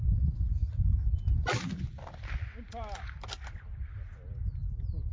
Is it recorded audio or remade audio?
recorded